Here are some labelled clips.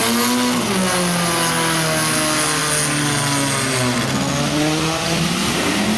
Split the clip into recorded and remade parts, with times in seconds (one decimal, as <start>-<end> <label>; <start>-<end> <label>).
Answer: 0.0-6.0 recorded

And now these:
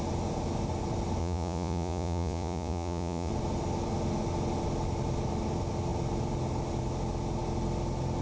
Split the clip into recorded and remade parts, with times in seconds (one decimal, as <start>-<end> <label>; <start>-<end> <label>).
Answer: 0.0-1.2 recorded; 1.2-3.3 remade; 3.3-8.2 recorded

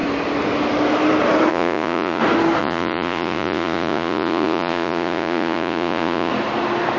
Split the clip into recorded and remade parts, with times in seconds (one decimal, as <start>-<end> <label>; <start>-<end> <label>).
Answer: 0.0-1.5 recorded; 1.5-2.2 remade; 2.2-2.6 recorded; 2.6-6.3 remade; 6.3-7.0 recorded

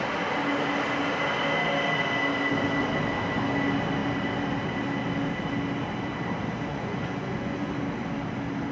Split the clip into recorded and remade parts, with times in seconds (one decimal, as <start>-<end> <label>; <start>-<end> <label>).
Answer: 0.0-6.7 recorded; 6.7-7.8 remade; 7.8-8.7 recorded

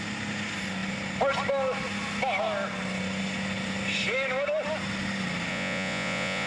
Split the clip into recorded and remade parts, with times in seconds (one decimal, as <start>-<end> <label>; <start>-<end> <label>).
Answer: 0.0-5.5 recorded; 5.5-6.5 remade

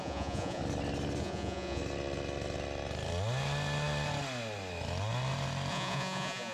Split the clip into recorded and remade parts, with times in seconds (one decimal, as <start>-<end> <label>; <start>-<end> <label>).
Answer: 0.0-0.6 remade; 0.6-1.2 recorded; 1.2-1.8 remade; 1.8-5.7 recorded; 5.7-6.5 remade

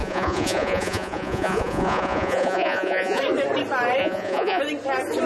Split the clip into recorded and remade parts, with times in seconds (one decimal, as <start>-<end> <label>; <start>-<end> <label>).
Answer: 0.0-3.2 remade; 3.2-4.0 recorded; 4.0-4.6 remade; 4.6-5.3 recorded

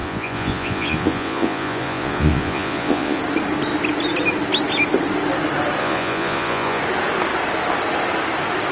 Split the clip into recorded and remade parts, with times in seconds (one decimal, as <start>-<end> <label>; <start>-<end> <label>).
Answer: 0.0-3.2 remade; 3.2-5.8 recorded; 5.8-6.8 remade; 6.8-8.7 recorded